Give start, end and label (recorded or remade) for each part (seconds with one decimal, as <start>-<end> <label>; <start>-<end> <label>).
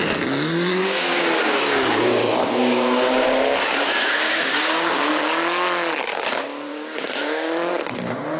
0.0-0.7 recorded; 0.7-5.2 remade; 5.2-6.7 recorded; 6.7-7.7 remade; 7.7-8.4 recorded